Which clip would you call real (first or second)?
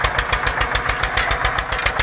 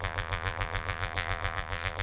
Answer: first